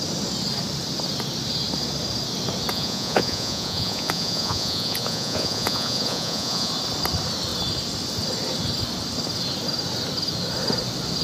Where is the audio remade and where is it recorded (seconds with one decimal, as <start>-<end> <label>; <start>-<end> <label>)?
0.0-2.7 recorded; 2.7-6.7 remade; 6.7-11.2 recorded